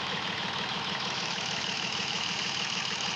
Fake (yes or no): yes